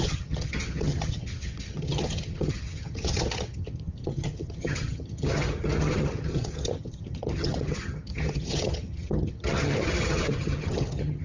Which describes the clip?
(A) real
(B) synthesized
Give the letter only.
B